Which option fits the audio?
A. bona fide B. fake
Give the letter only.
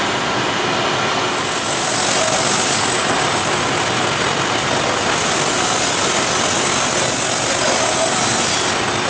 A